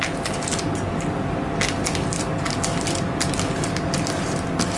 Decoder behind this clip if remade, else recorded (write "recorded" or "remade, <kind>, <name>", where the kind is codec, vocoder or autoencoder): recorded